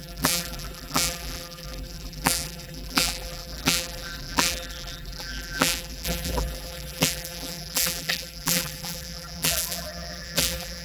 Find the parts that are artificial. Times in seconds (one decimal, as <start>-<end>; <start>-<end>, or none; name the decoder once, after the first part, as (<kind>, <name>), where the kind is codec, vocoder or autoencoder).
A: 0.0-10.8 (vocoder, BigVGAN v2)